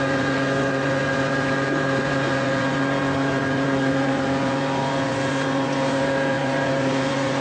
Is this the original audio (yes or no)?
no